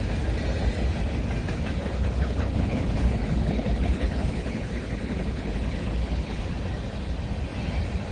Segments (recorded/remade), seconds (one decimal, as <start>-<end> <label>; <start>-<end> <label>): 0.0-1.8 recorded; 1.8-6.4 remade; 6.4-8.1 recorded